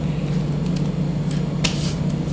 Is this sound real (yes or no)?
yes